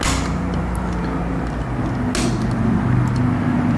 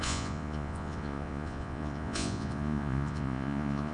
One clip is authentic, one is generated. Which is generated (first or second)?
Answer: second